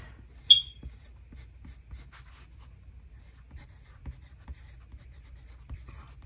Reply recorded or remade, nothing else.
recorded